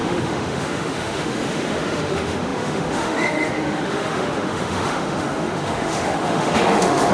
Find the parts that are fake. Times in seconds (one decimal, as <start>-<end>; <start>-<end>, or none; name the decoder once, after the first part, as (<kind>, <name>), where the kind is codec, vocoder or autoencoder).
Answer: 0.0-7.1 (autoencoder, DAC-VAE)